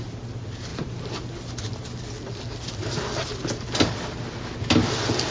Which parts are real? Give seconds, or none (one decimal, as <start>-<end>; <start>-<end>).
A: 0.0-5.3